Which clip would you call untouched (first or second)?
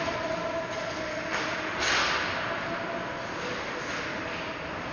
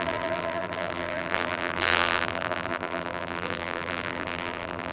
first